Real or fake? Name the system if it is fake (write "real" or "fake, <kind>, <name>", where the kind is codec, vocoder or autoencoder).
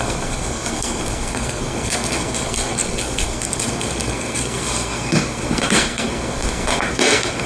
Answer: fake, codec, SNAC